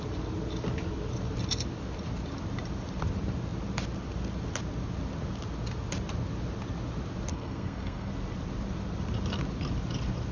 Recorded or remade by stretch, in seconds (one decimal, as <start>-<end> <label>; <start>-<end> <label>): 0.0-7.3 recorded; 7.3-8.1 remade; 8.1-10.3 recorded